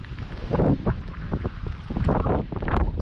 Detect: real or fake fake